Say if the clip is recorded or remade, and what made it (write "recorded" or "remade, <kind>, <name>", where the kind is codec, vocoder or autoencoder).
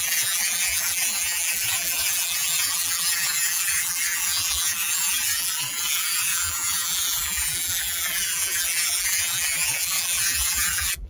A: remade, vocoder, BigVGAN v2